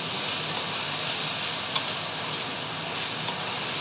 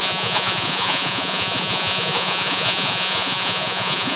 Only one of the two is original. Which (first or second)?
first